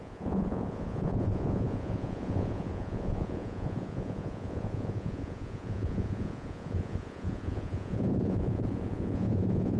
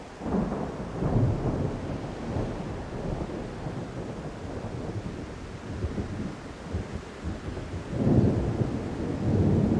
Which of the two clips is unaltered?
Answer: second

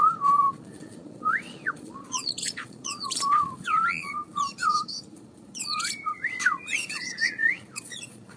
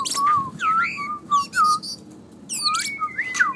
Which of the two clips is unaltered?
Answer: second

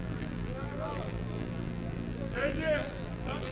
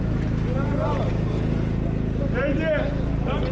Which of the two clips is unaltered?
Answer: second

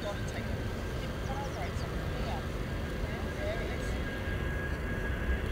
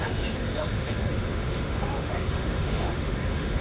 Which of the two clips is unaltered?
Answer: first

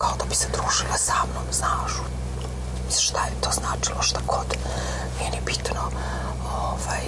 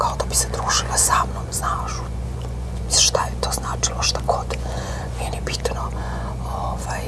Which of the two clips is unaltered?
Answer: first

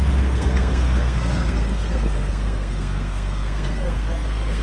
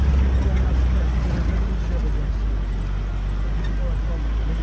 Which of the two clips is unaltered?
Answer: second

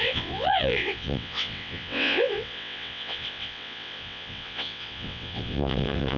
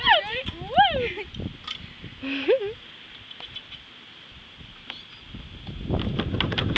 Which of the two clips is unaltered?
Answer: second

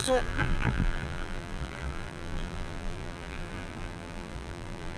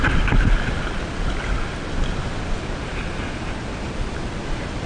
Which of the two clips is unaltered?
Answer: second